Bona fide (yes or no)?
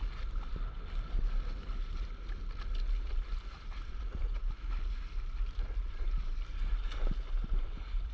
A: yes